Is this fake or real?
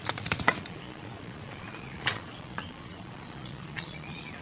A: fake